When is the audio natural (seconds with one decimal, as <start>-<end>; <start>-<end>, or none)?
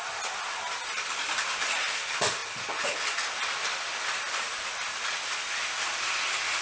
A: 0.0-6.6